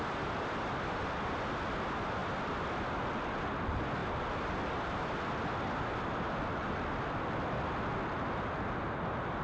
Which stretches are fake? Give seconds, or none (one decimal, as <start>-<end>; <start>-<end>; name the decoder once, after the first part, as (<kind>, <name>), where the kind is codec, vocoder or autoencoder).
none